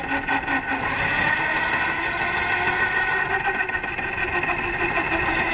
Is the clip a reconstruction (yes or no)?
no